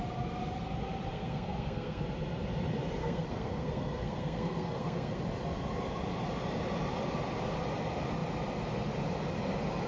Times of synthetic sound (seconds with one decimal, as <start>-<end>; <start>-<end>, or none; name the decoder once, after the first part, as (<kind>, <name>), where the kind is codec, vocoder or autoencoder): 1.1-2.0 (codec, SNAC); 3.0-5.2